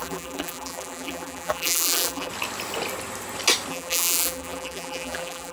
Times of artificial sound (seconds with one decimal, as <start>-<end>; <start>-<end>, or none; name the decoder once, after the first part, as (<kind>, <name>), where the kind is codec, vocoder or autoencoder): 0.0-2.3 (vocoder, BigVGAN v2); 3.7-5.5